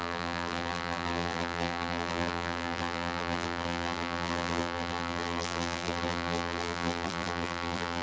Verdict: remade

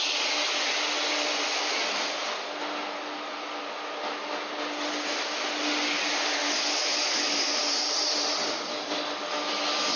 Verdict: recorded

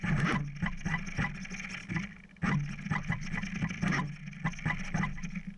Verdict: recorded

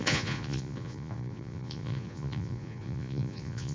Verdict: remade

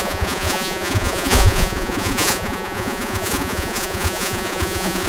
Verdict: remade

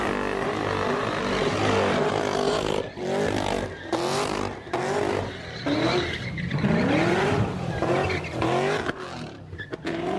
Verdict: recorded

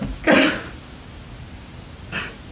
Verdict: recorded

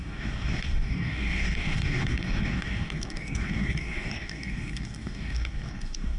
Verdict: remade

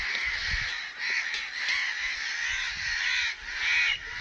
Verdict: recorded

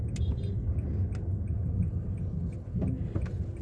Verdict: recorded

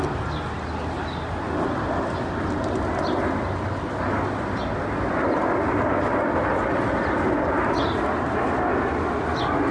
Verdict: recorded